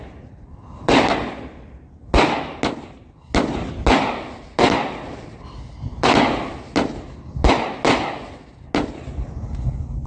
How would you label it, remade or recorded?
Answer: recorded